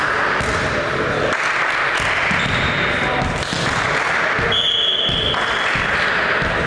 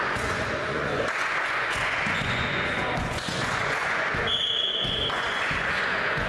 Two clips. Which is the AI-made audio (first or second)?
second